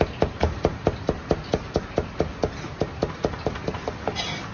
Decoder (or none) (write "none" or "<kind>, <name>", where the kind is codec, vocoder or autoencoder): none